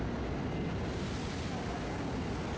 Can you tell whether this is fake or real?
real